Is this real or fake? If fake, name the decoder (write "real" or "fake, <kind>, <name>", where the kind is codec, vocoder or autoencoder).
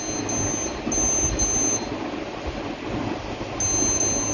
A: real